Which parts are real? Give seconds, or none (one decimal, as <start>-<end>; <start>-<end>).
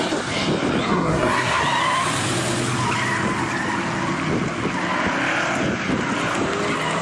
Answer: 0.0-0.8; 1.6-7.0